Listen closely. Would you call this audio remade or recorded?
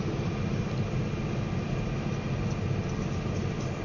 recorded